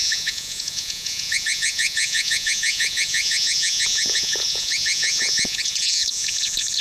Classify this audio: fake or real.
fake